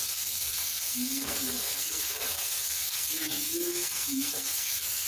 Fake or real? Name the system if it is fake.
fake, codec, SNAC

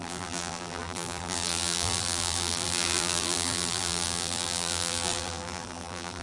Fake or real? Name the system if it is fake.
fake, vocoder, BigVGAN v2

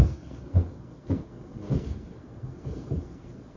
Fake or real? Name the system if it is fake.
fake, codec, SNAC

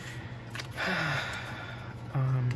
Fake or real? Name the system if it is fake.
fake, vocoder, Vocos